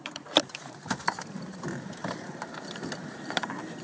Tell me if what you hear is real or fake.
fake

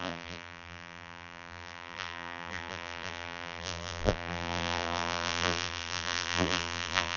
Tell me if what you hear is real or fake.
fake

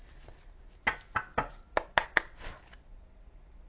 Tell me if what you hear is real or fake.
real